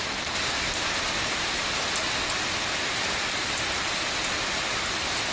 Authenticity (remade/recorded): recorded